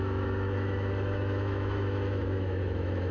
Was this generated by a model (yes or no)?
yes